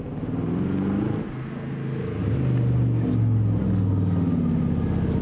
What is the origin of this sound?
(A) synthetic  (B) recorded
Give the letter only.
B